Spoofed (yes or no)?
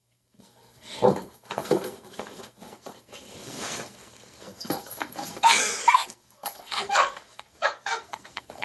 yes